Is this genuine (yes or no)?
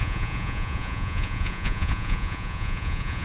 no